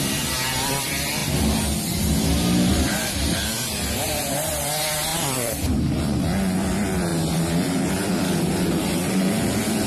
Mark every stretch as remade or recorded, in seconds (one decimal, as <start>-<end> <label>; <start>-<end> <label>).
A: 0.0-2.7 recorded; 2.7-3.2 remade; 3.2-5.1 recorded; 5.1-6.2 remade; 6.2-7.1 recorded; 7.1-9.2 remade; 9.2-9.9 recorded